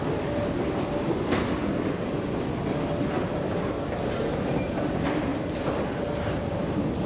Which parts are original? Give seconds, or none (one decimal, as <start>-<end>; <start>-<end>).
0.0-7.1